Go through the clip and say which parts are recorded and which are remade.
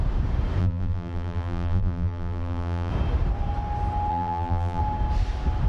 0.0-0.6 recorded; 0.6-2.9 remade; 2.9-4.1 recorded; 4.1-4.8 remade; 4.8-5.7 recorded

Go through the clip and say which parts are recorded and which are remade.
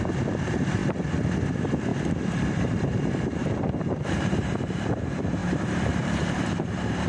0.0-0.8 remade; 0.8-1.5 recorded; 1.5-1.9 remade; 1.9-2.8 recorded; 2.8-7.1 remade